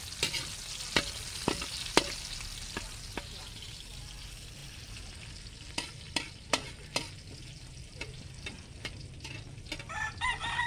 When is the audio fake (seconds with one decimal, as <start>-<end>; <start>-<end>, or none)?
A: none